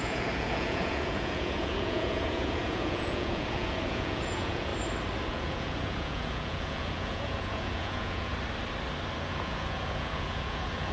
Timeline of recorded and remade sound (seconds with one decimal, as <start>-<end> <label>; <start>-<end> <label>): 0.0-4.7 remade; 4.7-5.3 recorded; 5.3-8.3 remade; 8.3-9.2 recorded; 9.2-10.9 remade